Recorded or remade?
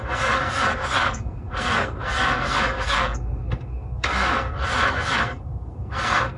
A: remade